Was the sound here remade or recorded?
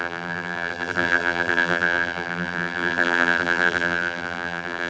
remade